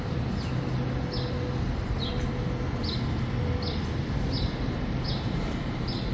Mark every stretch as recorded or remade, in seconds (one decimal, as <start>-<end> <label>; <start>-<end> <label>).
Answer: 0.0-5.1 recorded; 5.1-6.1 remade